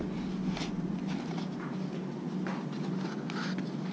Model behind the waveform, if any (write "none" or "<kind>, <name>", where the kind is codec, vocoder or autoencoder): none